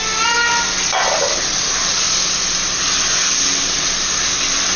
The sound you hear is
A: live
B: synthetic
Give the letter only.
A